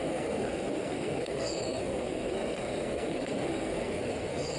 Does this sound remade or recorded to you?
remade